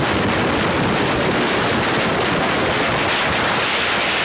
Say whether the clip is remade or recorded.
recorded